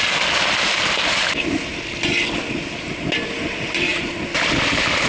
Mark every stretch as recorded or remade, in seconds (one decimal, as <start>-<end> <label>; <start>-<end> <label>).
0.0-1.7 remade; 1.7-3.5 recorded; 3.5-5.1 remade